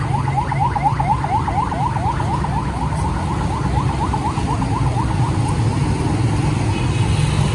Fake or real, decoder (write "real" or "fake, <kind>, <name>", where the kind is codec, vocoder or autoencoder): real